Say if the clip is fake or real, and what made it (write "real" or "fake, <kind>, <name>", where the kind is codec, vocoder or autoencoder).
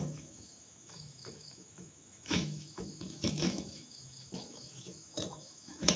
fake, autoencoder, DAC-VAE